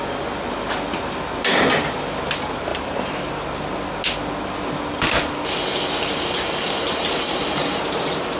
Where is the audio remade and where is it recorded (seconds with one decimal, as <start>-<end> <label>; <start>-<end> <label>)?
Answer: 0.0-2.7 recorded; 2.7-3.3 remade; 3.3-5.7 recorded; 5.7-8.4 remade